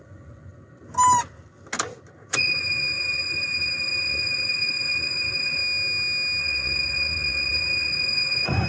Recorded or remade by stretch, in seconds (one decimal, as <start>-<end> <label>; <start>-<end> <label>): 0.0-0.5 remade; 0.5-2.3 recorded; 2.3-5.6 remade; 5.6-6.4 recorded; 6.4-8.7 remade